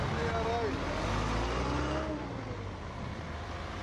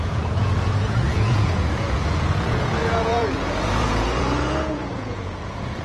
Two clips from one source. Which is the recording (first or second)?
first